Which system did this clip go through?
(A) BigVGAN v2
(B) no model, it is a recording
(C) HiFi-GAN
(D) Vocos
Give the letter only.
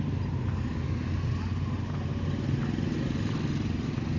B